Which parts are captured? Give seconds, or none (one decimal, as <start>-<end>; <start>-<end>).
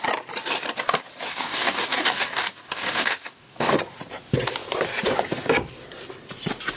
0.0-1.3; 3.8-6.8